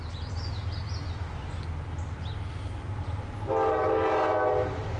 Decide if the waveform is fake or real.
real